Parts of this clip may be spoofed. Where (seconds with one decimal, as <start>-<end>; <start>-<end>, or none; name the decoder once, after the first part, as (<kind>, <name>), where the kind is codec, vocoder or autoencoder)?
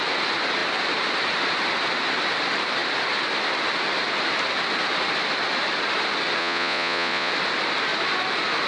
6.4-7.3 (vocoder, Vocos)